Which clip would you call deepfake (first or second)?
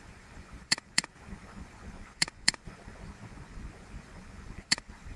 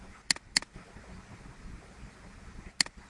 first